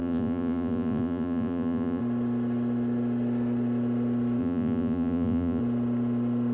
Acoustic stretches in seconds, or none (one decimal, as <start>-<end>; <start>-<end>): 2.0-4.4; 5.6-6.5